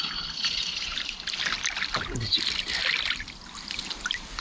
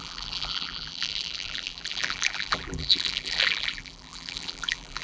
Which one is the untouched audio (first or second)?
first